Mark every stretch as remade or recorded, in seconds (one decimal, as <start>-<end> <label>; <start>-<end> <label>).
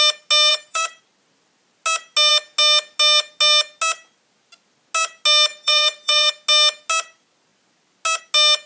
0.0-0.5 recorded; 0.5-1.0 remade; 1.0-5.5 recorded; 5.5-6.3 remade; 6.3-8.7 recorded